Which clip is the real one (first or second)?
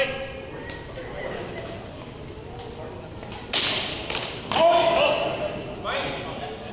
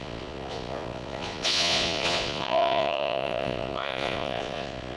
first